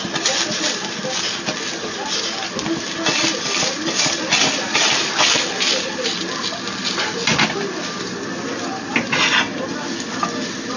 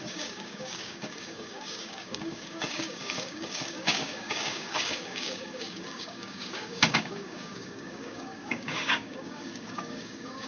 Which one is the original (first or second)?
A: first